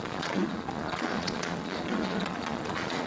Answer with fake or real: fake